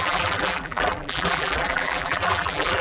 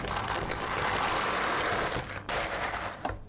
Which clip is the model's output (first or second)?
first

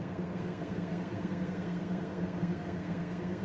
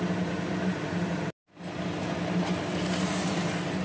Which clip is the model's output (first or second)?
first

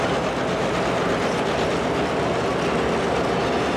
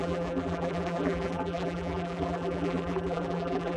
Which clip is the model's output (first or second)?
second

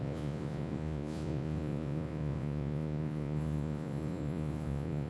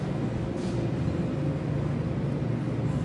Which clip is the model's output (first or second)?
first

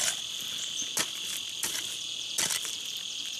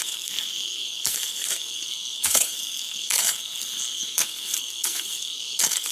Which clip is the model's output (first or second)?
second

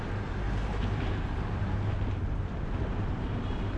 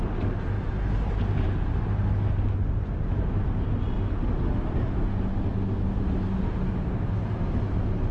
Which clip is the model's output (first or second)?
first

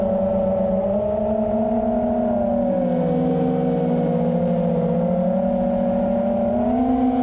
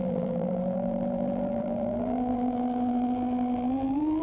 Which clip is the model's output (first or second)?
second